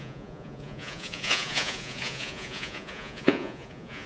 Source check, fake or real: fake